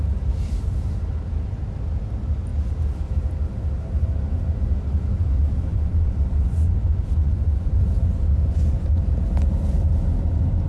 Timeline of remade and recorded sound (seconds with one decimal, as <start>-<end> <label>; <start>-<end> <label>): 0.0-5.7 recorded; 5.7-7.8 remade; 7.8-8.4 recorded; 8.4-9.0 remade; 9.0-10.7 recorded